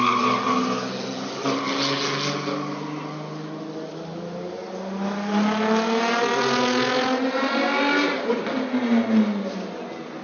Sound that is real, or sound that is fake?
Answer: real